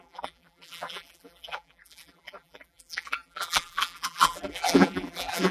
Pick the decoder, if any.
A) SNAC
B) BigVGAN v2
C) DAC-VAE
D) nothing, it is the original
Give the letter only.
B